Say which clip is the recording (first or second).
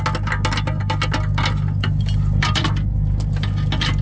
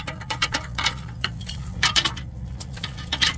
first